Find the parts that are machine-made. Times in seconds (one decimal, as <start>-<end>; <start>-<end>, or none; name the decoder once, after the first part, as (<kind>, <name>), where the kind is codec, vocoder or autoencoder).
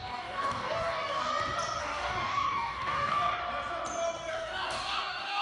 0.0-1.3 (codec, DAC); 1.8-3.4; 4.3-5.4